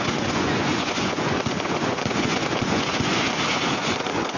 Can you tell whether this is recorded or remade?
remade